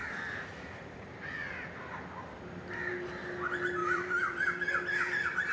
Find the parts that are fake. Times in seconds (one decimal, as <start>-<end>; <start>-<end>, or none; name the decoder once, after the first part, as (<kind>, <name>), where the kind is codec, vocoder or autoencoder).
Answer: 0.0-2.9 (vocoder, BigVGAN v2); 3.8-4.4